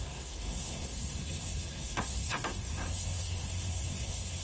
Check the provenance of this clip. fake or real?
fake